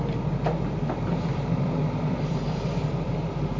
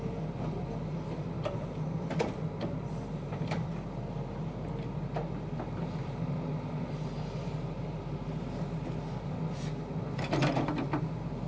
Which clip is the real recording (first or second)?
second